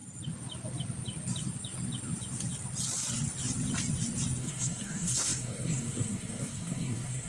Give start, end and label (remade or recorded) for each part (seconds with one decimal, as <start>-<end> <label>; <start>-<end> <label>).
0.0-4.4 recorded; 4.4-7.3 remade